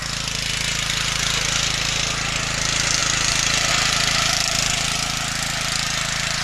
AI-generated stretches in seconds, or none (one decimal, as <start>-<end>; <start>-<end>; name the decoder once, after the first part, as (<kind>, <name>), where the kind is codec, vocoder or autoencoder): none